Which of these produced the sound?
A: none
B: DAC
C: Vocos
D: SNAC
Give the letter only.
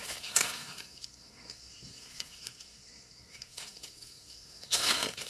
D